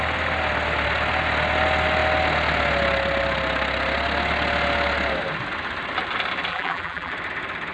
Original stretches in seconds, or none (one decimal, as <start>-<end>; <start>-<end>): 0.0-6.5; 7.1-7.7